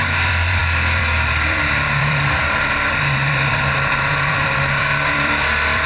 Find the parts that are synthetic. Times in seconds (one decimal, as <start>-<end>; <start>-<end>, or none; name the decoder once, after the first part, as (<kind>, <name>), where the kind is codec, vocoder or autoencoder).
0.0-5.9 (vocoder, BigVGAN v2)